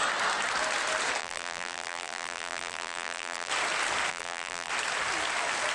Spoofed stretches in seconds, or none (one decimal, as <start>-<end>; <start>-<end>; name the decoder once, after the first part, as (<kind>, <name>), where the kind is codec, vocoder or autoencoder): 1.2-3.5 (vocoder, BigVGAN v2); 4.1-4.7